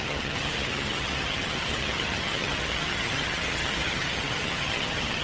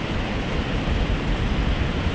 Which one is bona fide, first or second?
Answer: second